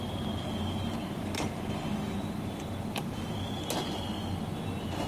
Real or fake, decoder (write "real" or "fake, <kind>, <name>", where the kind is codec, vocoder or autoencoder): real